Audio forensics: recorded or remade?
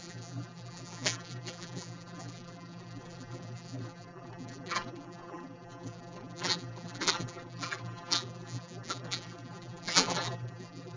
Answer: remade